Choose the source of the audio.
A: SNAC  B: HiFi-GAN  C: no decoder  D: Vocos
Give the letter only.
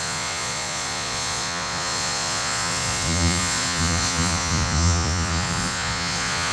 D